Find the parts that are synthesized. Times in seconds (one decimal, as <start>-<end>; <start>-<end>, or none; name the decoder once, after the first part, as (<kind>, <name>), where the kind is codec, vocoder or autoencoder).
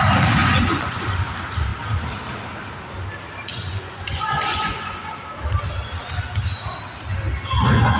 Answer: 0.4-1.0 (vocoder, Vocos); 3.5-5.1